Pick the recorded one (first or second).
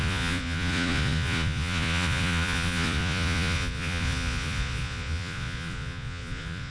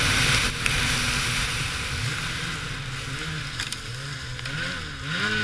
second